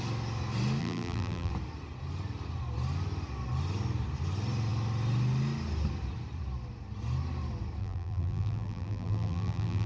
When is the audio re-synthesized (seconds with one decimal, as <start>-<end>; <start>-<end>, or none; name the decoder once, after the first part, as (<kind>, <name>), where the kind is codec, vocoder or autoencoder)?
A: 0.8-1.5 (vocoder, BigVGAN v2); 7.8-9.9